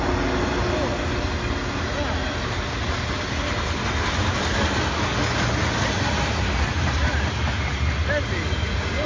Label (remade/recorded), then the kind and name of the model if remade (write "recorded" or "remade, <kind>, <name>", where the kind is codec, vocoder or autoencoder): recorded